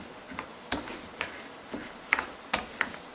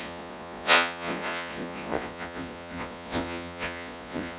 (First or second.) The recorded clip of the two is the first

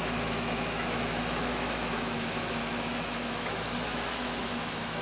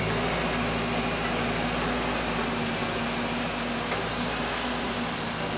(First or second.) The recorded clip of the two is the second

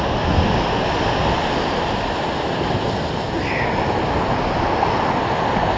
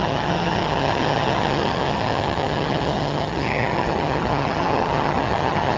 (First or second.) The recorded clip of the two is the first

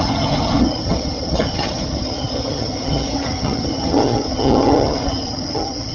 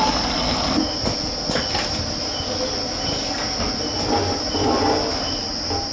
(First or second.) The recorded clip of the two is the second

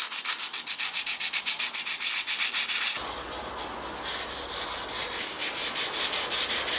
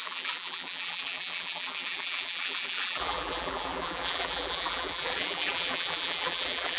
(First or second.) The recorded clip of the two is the first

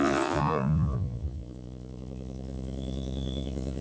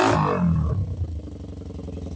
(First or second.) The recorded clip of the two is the second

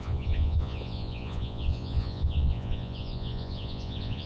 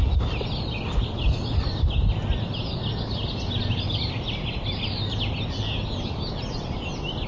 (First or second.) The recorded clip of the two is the second